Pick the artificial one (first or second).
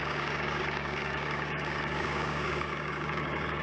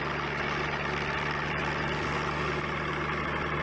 first